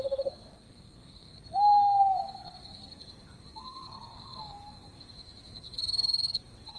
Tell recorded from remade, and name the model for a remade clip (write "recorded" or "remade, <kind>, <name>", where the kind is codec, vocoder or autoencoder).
remade, codec, SNAC